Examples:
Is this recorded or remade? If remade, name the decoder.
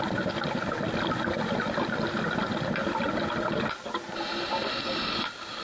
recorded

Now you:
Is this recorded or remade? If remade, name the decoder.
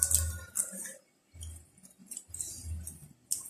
recorded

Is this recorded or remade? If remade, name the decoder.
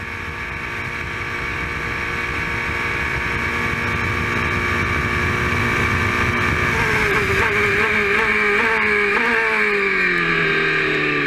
recorded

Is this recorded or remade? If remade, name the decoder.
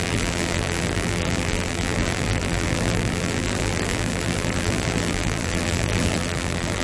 remade, vocoder, BigVGAN v2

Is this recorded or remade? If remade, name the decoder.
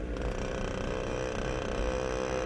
recorded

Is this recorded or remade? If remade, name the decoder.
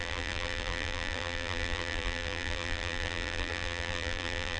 remade, vocoder, BigVGAN v2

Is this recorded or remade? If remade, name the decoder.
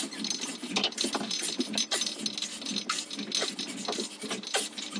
recorded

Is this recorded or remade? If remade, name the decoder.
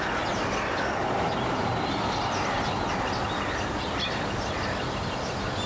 recorded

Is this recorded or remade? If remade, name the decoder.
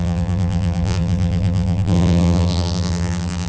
remade, vocoder, BigVGAN v2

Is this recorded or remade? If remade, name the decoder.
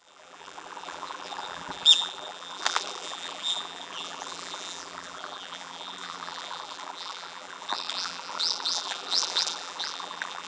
remade, vocoder, BigVGAN v2